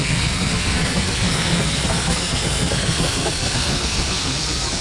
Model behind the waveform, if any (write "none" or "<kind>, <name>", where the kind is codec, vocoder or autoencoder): codec, SNAC